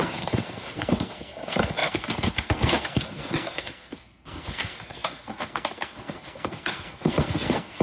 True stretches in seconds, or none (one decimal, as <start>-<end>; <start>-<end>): none

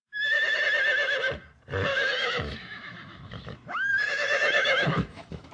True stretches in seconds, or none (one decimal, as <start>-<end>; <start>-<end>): 0.6-1.9

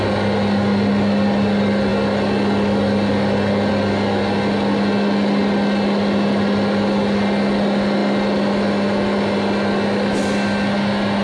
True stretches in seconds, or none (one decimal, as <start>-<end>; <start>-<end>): 0.0-11.2

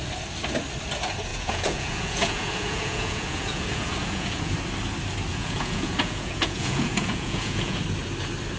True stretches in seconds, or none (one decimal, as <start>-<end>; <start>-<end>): 0.0-1.3; 4.5-5.3; 7.8-8.6

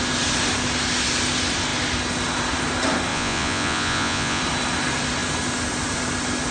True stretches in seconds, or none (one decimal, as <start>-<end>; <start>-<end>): 0.0-3.1; 4.4-6.5

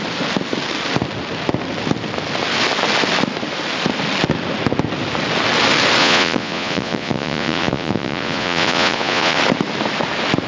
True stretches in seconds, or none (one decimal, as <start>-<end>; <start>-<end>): 0.0-6.0; 9.4-10.5

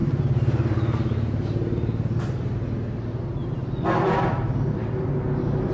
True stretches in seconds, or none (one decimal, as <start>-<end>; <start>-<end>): 2.2-3.4; 5.1-5.7

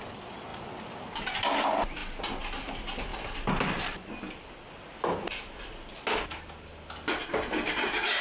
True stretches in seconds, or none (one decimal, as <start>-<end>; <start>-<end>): 0.0-8.2